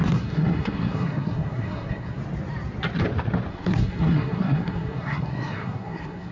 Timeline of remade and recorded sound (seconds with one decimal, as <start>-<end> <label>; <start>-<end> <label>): 0.0-2.2 remade; 2.2-3.5 recorded; 3.5-6.3 remade